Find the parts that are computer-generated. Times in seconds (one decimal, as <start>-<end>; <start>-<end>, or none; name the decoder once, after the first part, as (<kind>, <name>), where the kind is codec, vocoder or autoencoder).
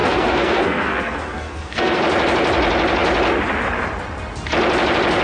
0.0-2.0 (codec, SNAC)